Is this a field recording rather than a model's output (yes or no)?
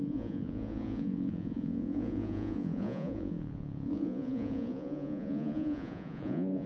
no